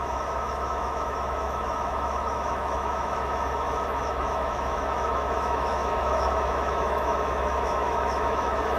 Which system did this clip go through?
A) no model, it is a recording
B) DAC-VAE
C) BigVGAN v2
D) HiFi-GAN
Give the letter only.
B